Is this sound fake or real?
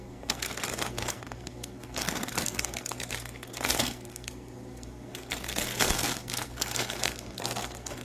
fake